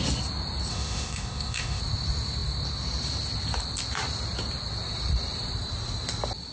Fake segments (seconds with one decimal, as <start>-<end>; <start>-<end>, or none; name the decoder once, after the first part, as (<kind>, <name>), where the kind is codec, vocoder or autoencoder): 0.7-1.8 (autoencoder, DAC-VAE)